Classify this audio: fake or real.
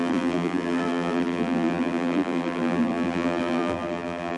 fake